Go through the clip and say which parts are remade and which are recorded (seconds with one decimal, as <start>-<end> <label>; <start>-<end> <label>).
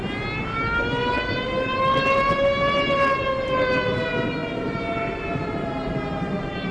0.0-1.0 recorded; 1.0-2.3 remade; 2.3-6.7 recorded